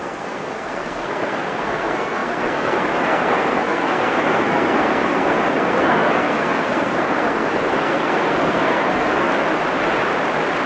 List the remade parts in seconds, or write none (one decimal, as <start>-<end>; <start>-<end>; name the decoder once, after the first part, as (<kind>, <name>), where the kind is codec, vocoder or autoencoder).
0.0-9.3 (codec, SNAC)